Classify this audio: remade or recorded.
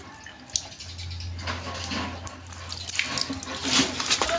recorded